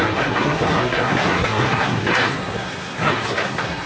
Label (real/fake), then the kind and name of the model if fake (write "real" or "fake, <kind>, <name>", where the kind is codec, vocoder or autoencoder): fake, codec, SNAC